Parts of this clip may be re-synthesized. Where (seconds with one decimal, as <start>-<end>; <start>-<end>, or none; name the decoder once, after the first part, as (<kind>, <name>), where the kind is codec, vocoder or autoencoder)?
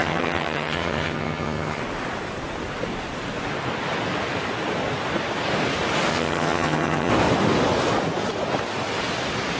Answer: 0.0-1.8 (vocoder, HiFi-GAN); 6.1-7.1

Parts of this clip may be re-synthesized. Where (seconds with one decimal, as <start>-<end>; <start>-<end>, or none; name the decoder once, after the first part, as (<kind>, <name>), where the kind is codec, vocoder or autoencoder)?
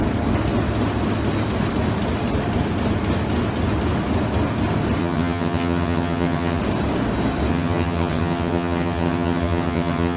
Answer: 5.0-6.6 (vocoder, HiFi-GAN); 7.5-10.2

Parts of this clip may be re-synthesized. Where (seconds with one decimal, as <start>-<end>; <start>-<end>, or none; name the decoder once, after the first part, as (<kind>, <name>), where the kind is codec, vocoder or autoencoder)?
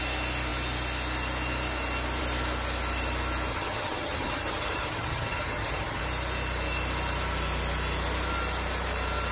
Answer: 3.5-6.0 (vocoder, HiFi-GAN)